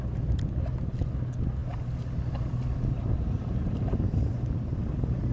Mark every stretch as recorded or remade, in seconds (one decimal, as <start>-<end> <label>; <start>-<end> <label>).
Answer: 0.0-5.3 recorded